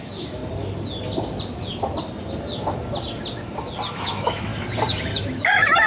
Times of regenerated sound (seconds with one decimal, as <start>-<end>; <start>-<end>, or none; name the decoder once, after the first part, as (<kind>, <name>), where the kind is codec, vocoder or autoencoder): 0.0-0.4 (autoencoder, DAC-VAE); 3.9-4.5; 5.2-5.9